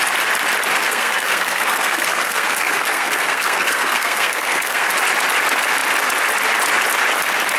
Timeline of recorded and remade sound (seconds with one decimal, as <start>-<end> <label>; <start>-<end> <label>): 0.0-0.8 recorded; 0.8-4.9 remade; 4.9-7.6 recorded